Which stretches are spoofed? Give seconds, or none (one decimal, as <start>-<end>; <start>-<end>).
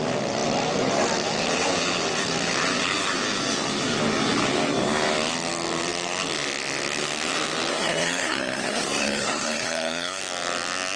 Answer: 7.7-10.2